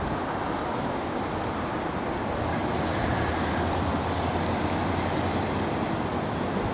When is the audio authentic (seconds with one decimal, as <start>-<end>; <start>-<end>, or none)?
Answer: 0.0-6.7